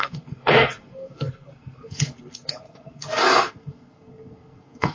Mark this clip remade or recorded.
remade